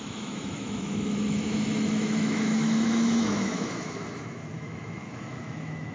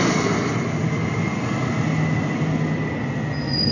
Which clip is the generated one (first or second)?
first